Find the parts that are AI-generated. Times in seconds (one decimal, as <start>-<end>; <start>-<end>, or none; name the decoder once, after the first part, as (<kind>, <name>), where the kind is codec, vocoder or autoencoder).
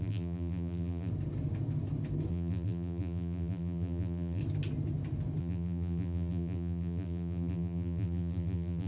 0.0-1.1 (vocoder, BigVGAN v2); 2.3-4.4; 5.4-8.9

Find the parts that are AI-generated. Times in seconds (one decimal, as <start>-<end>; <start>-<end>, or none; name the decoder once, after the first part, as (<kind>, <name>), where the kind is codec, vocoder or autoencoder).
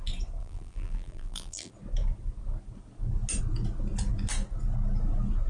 0.4-1.7 (vocoder, BigVGAN v2)